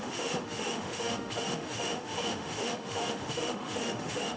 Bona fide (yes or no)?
no